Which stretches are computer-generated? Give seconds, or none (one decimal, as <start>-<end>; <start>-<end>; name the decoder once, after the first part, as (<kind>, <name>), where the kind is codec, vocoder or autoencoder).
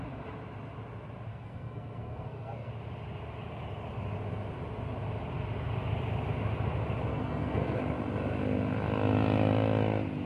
1.3-2.7 (codec, SNAC); 7.1-7.8